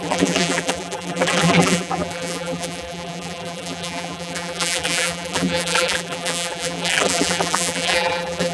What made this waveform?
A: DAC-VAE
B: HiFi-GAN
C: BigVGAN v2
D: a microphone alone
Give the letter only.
C